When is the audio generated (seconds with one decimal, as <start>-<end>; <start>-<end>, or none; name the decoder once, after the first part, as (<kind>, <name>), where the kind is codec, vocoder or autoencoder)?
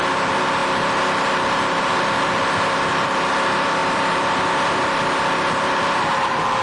3.8-6.0 (vocoder, BigVGAN v2)